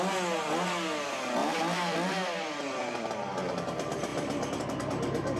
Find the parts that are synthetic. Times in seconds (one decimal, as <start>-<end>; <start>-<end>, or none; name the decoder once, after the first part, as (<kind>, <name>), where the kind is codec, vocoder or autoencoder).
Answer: 1.4-3.1 (vocoder, BigVGAN v2); 4.1-4.6